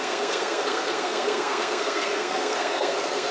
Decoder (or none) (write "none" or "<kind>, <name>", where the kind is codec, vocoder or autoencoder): codec, SNAC